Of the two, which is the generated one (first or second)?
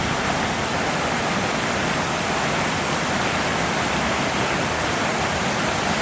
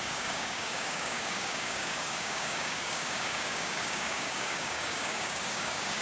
second